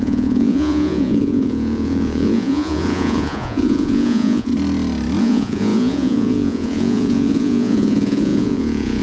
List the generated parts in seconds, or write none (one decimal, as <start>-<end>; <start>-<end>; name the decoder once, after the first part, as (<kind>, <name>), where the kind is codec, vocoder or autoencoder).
0.0-4.5 (vocoder, Vocos); 5.2-9.0